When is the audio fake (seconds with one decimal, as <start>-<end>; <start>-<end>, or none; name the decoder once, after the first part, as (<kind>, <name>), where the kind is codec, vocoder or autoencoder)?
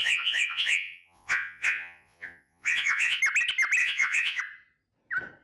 0.0-3.2 (vocoder, Vocos); 3.8-4.4